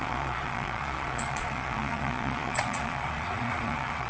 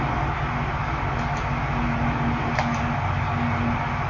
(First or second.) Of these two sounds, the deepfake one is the first